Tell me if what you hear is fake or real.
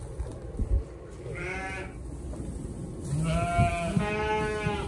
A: real